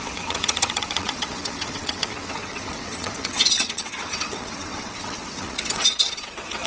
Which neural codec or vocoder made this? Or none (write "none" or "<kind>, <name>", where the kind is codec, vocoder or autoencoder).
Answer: vocoder, WaveNeXt